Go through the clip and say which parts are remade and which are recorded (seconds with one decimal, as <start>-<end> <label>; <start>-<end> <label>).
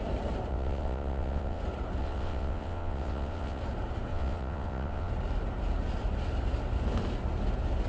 0.0-0.5 recorded; 0.5-1.6 remade; 1.6-2.0 recorded; 2.0-3.6 remade; 3.6-4.1 recorded; 4.1-5.1 remade; 5.1-7.9 recorded